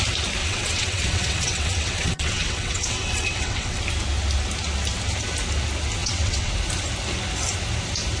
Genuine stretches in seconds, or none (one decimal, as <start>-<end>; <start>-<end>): 0.0-0.4; 3.8-6.0; 6.5-8.2